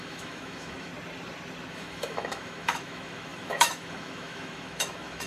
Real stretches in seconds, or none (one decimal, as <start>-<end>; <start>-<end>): 0.9-1.7